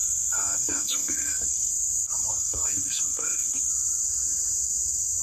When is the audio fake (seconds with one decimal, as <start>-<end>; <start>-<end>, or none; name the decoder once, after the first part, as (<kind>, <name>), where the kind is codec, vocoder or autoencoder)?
0.0-1.7 (codec, SNAC); 2.3-3.7